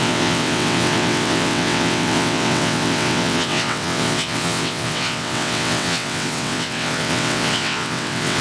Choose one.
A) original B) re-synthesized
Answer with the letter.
B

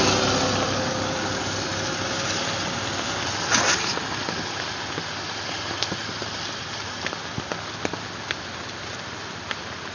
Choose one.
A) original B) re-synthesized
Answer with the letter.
A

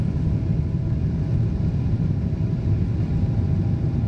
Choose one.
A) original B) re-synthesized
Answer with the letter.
A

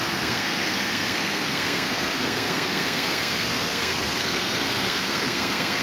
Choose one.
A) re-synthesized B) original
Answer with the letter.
A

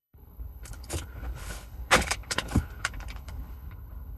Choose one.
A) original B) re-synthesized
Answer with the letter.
B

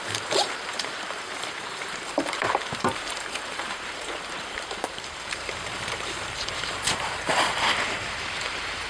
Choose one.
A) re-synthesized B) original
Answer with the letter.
A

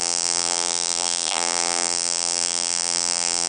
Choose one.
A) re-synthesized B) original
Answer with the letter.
A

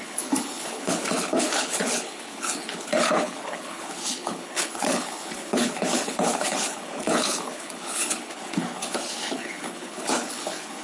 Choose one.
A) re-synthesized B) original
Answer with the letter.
A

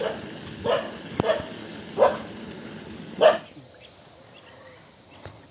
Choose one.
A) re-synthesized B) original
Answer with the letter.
B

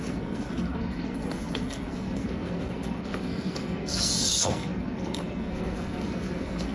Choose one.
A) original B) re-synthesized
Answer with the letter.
B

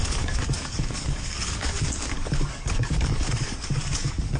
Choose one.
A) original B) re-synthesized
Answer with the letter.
B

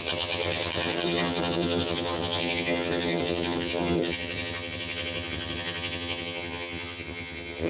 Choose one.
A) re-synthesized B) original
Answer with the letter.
A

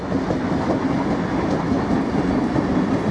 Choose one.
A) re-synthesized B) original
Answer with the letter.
B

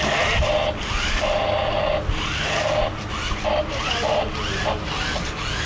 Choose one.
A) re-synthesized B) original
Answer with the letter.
B